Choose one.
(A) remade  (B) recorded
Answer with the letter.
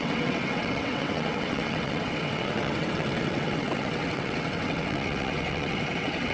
A